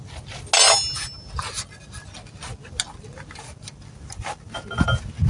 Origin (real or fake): real